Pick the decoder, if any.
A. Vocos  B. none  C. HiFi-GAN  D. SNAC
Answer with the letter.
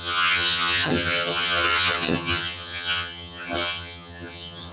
C